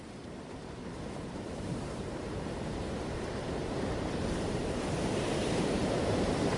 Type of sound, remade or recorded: remade